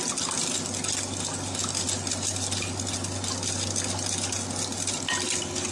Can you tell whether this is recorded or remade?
recorded